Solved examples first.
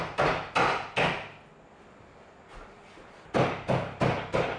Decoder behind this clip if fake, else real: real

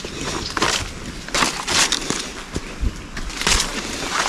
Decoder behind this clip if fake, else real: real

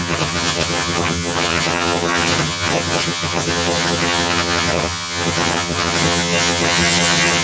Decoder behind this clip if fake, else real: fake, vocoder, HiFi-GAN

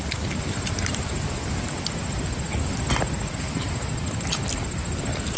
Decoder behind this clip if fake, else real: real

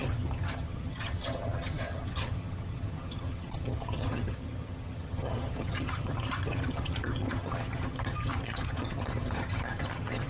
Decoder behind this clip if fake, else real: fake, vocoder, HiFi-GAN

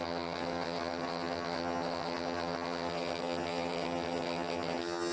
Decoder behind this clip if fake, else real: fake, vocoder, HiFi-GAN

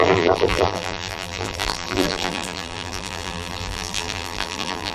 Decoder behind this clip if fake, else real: fake, vocoder, BigVGAN v2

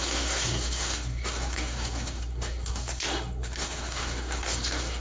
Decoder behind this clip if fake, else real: fake, codec, SNAC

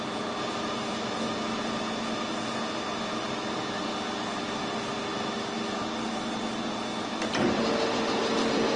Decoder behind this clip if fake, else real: real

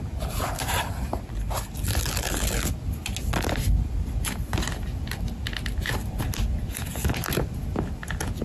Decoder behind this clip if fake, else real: real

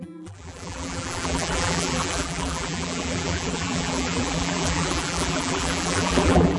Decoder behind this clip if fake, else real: fake, vocoder, BigVGAN v2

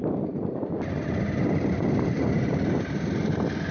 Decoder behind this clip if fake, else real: real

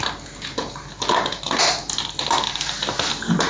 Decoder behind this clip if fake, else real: real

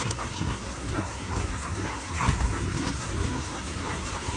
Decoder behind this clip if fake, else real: fake, codec, SNAC